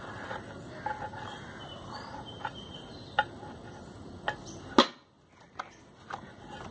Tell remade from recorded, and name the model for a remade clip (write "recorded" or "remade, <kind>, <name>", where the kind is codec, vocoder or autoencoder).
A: recorded